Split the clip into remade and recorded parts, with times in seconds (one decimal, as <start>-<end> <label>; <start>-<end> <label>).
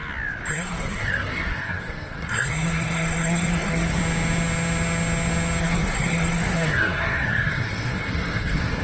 0.0-0.5 recorded; 0.5-4.0 remade; 4.0-5.6 recorded; 5.6-8.8 remade